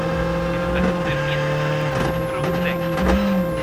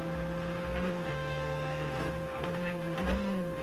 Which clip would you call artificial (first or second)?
second